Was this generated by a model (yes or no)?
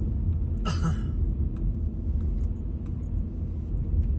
no